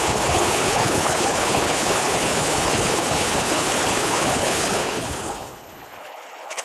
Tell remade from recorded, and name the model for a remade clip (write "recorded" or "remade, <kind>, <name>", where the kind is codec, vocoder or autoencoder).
remade, codec, HILCodec